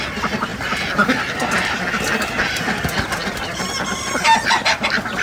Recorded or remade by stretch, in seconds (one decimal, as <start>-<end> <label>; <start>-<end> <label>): 0.0-5.2 recorded